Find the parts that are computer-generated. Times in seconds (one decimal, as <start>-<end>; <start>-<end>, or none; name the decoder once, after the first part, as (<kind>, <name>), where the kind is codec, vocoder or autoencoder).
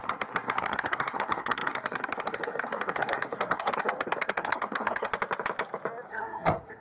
0.0-5.1 (codec, SNAC); 6.1-6.8